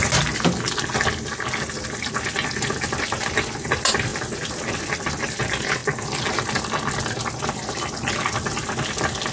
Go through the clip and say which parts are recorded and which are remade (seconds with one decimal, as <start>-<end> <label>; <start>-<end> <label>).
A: 0.0-9.3 recorded